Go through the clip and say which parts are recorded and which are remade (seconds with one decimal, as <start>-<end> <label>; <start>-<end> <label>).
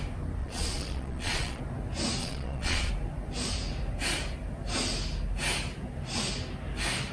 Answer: 0.0-0.4 recorded; 0.4-1.6 remade; 1.6-2.2 recorded; 2.2-2.9 remade; 2.9-7.1 recorded